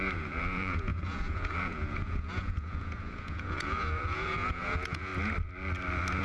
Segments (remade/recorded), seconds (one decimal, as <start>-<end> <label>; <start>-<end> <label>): 0.0-5.1 remade; 5.1-6.2 recorded